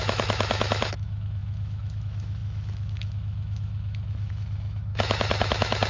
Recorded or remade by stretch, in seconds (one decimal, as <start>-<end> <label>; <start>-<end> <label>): 0.0-5.9 remade